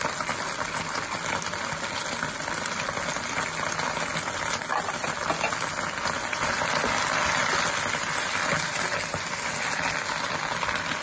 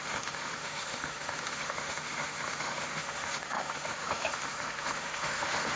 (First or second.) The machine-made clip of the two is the second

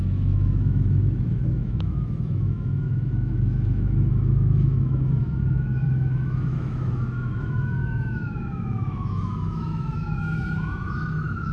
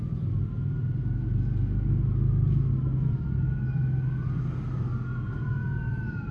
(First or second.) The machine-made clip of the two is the first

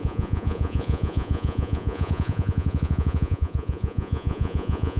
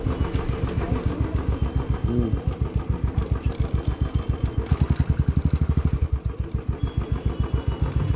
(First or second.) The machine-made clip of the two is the first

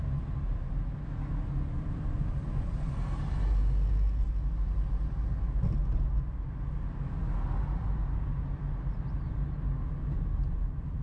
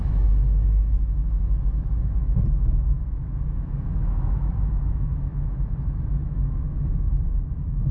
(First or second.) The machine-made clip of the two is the second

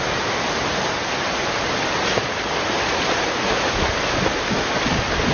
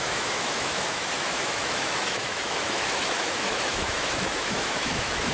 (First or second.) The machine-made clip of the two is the second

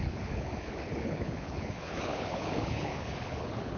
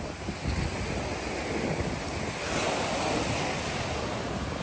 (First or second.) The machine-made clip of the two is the first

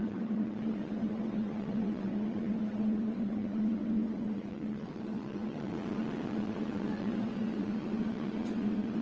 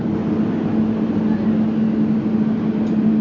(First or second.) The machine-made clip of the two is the first